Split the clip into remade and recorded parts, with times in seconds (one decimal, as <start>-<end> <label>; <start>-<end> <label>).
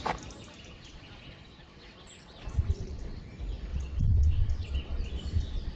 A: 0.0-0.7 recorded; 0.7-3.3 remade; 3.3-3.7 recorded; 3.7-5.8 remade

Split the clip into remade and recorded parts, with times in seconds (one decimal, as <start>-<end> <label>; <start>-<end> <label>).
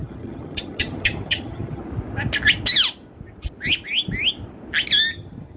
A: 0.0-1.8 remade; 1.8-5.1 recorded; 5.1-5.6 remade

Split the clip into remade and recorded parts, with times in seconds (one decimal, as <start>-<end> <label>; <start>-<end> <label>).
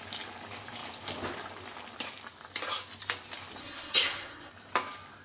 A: 0.0-3.6 recorded; 3.6-4.5 remade; 4.5-5.2 recorded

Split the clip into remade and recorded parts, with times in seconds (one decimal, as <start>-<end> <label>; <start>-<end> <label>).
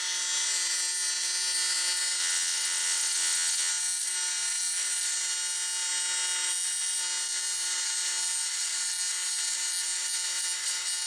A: 0.0-2.2 recorded; 2.2-3.7 remade; 3.7-11.1 recorded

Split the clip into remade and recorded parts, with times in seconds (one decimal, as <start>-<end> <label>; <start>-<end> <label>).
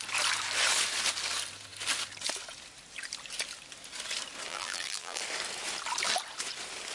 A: 0.0-4.5 recorded; 4.5-5.2 remade; 5.2-6.9 recorded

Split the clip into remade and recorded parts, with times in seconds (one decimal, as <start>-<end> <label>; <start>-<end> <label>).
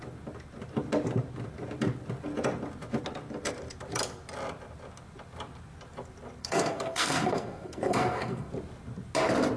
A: 0.0-6.4 recorded; 6.4-8.5 remade; 8.5-9.6 recorded